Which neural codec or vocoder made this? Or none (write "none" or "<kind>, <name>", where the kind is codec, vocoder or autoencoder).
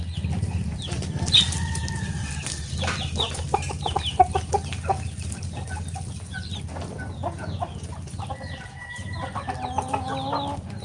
none